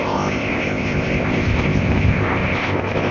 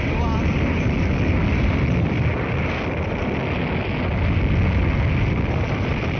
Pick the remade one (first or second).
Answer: first